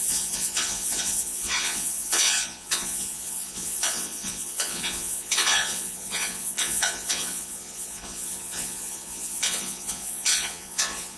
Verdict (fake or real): fake